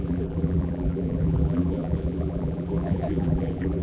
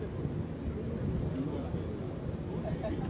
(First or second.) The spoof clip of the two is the first